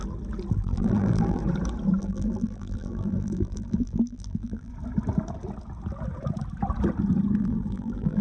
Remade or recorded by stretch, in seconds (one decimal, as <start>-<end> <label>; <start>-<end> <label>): 0.0-0.5 recorded; 0.5-1.4 remade; 1.4-2.0 recorded; 2.0-4.7 remade; 4.7-7.4 recorded; 7.4-8.2 remade